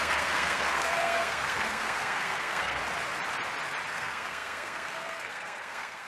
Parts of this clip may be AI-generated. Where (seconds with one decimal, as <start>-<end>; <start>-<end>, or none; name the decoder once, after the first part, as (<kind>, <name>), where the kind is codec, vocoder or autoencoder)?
0.0-2.8 (codec, SNAC); 3.9-6.1